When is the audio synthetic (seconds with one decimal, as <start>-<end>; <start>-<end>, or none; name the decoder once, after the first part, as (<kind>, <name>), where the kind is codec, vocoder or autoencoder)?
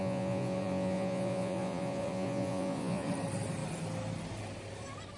0.0-3.1 (vocoder, Vocos)